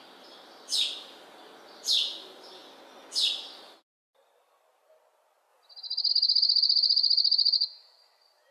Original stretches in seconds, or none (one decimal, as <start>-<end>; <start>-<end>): 0.0-8.5